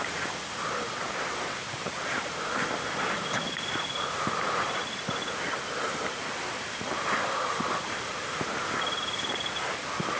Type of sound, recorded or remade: recorded